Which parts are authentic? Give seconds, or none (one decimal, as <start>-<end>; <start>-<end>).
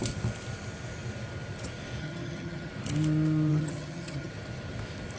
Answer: 0.0-2.0; 2.7-3.5; 4.3-5.2